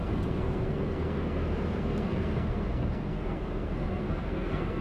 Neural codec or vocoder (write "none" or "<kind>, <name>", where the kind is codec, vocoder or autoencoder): codec, SNAC